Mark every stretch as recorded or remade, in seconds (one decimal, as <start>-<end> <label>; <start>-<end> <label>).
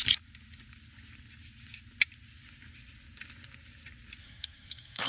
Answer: 0.0-4.2 recorded; 4.2-5.1 remade